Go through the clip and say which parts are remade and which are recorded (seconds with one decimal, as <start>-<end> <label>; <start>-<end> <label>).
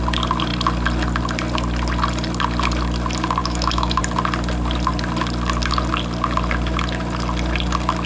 0.0-3.4 recorded; 3.4-4.0 remade; 4.0-8.1 recorded